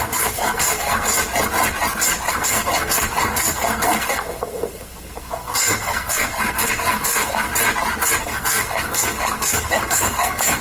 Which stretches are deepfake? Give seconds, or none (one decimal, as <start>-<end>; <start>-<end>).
0.0-1.1; 2.3-7.5; 8.2-10.6